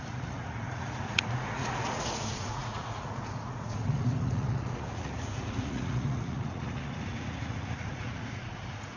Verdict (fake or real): fake